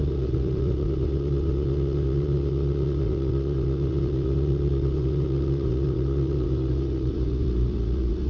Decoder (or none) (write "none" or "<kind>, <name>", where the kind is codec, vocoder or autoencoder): vocoder, Vocos